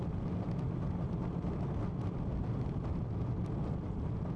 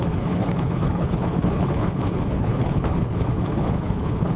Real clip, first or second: first